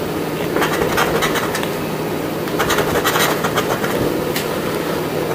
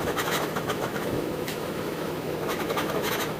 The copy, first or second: second